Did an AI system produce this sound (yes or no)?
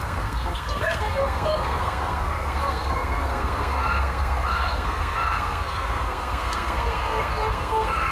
yes